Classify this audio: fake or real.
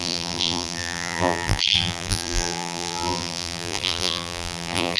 fake